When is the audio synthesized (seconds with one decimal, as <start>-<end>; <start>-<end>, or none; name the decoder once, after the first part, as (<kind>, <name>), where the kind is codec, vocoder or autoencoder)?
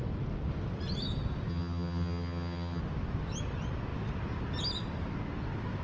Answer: 1.5-2.8 (vocoder, HiFi-GAN)